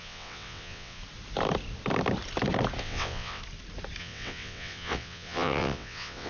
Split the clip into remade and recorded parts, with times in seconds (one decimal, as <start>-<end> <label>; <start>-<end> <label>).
0.0-1.0 remade; 1.0-2.8 recorded; 2.8-3.4 remade; 3.4-4.0 recorded; 4.0-6.3 remade